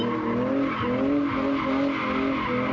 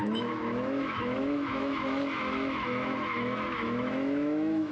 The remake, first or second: second